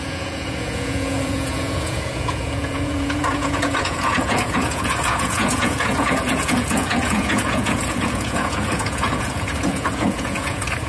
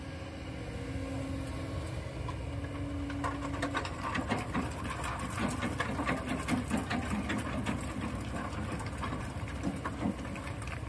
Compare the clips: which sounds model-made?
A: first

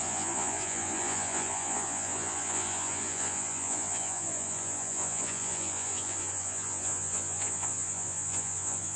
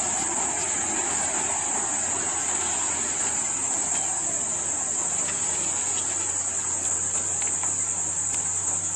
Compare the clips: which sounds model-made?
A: first